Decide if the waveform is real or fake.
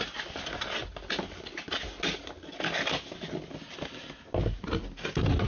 real